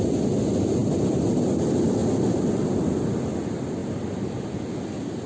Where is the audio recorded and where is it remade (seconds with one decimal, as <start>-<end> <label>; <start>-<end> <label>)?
0.0-5.3 recorded